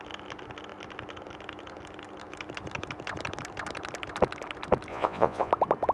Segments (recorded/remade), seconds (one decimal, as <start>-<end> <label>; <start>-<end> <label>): 0.0-4.9 recorded; 4.9-5.5 remade; 5.5-5.9 recorded